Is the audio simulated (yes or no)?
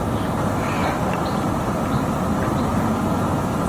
no